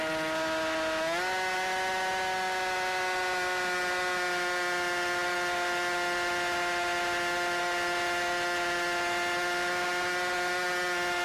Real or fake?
real